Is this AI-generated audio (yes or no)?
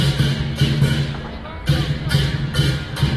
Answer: no